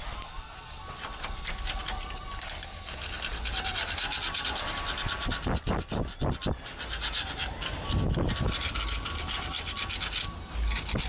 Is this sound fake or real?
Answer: real